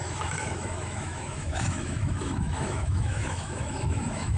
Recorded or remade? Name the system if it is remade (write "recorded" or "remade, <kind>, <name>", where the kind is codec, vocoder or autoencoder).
remade, autoencoder, DAC-VAE